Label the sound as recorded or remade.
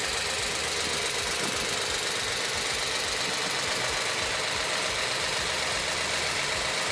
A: recorded